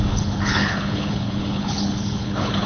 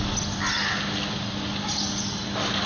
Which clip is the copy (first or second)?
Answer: first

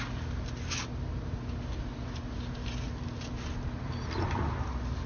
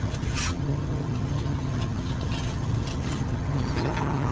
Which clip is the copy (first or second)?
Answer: second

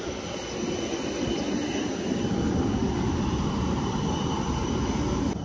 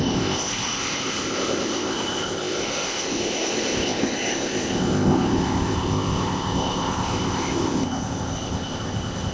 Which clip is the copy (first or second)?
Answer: second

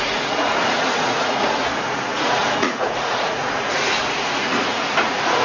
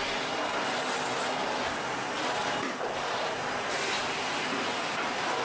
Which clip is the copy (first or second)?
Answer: first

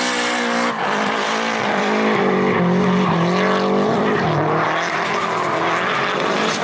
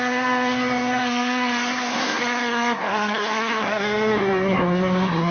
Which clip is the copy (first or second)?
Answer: second